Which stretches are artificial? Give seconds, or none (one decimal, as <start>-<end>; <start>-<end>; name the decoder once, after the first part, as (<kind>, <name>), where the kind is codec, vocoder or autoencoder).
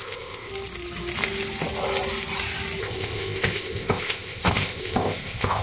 0.0-0.5 (codec, ZipCodec); 2.8-5.6